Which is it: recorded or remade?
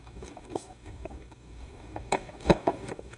remade